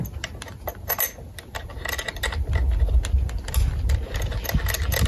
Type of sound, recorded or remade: recorded